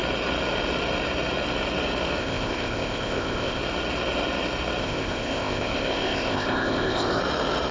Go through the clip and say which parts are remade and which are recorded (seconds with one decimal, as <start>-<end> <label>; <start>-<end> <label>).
0.0-2.2 recorded; 2.2-3.6 remade; 3.6-4.8 recorded; 4.8-7.2 remade; 7.2-7.7 recorded